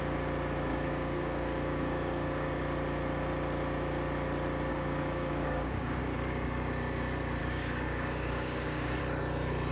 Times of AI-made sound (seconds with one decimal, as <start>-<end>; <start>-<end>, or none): 0.7-2.6; 4.7-6.0; 7.4-9.0